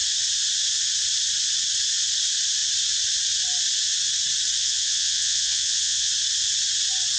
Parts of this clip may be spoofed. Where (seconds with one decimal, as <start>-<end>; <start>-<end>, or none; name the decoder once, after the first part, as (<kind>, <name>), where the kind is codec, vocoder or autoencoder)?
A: 4.6-6.1 (vocoder, WaveNeXt)